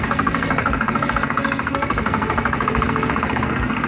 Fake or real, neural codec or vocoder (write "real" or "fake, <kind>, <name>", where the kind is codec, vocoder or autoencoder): fake, codec, SNAC